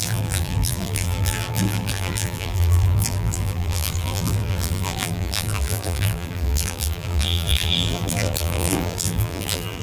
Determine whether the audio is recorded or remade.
remade